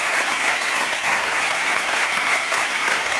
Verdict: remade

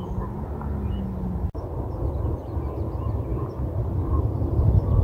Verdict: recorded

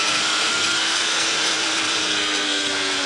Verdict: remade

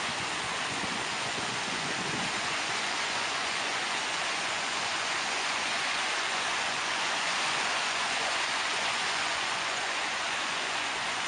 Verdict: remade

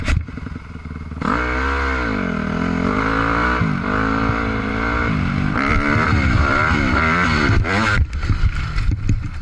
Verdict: recorded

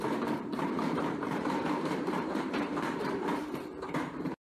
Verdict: remade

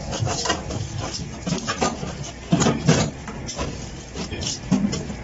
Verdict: recorded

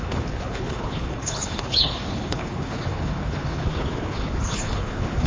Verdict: remade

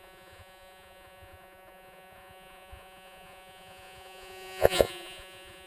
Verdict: remade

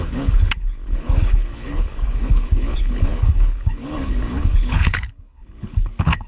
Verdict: remade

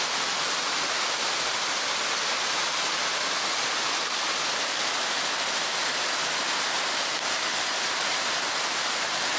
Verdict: recorded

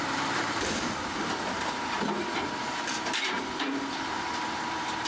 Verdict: remade